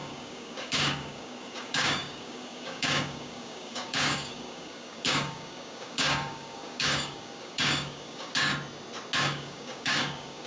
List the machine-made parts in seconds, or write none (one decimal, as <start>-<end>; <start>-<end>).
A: 0.0-8.5; 9.2-10.5